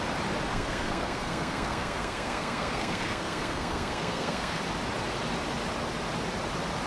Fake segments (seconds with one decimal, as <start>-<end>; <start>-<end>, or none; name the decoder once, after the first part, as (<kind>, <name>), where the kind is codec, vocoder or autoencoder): 0.5-4.6 (codec, SNAC)